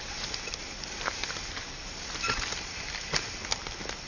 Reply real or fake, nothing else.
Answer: real